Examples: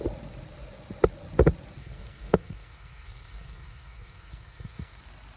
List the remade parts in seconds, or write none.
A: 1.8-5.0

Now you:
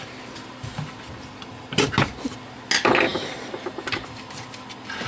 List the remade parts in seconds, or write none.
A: none

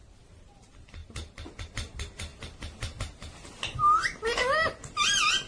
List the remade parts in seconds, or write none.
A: none

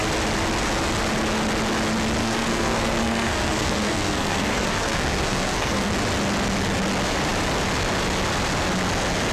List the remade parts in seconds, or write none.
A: 2.2-5.9